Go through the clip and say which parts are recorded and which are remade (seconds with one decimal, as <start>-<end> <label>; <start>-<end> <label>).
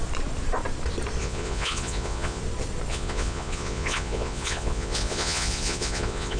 0.0-1.2 recorded; 1.2-2.4 remade; 2.4-2.9 recorded; 2.9-6.4 remade